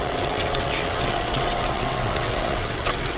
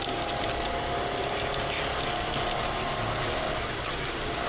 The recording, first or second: second